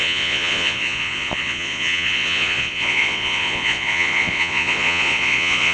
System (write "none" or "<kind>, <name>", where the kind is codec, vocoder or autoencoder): vocoder, Vocos